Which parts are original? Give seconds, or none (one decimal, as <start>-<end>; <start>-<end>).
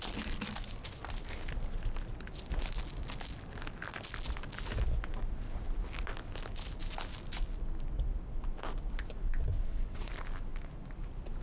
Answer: 0.0-9.5; 10.1-11.4